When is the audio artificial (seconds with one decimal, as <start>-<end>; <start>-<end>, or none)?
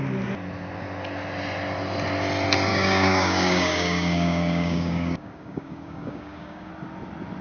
2.7-6.7